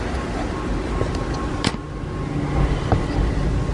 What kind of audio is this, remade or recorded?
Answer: recorded